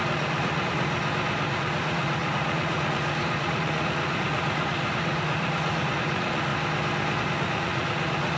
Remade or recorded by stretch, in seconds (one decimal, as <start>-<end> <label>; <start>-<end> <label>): 0.0-1.0 remade; 1.0-1.5 recorded; 1.5-6.5 remade; 6.5-7.2 recorded; 7.2-8.4 remade